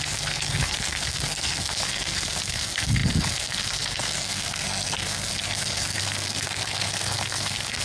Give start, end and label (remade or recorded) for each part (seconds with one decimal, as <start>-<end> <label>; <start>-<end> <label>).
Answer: 0.0-7.8 remade